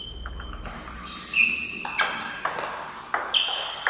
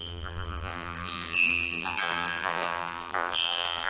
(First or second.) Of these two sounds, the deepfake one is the second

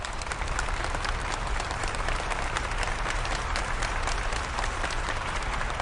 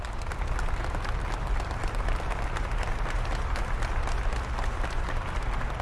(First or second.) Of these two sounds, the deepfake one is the first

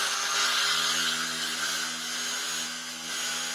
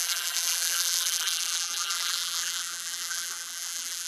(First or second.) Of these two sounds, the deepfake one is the second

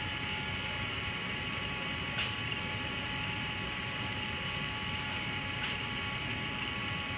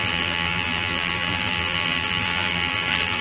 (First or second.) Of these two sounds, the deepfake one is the second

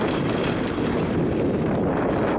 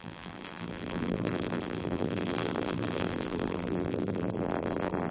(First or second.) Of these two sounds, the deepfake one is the second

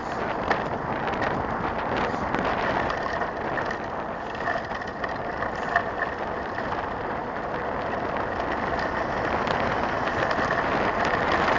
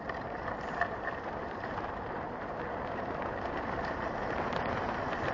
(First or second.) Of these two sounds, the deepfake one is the second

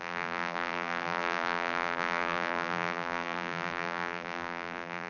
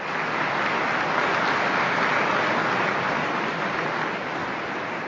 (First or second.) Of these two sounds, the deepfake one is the first